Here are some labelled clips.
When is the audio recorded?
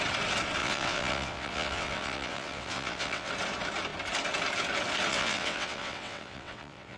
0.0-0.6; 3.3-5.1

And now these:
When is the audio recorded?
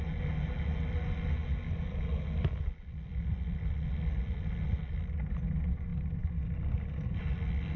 0.0-7.8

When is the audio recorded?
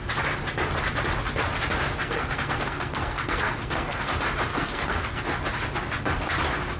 0.0-2.0; 4.1-4.5; 5.2-6.8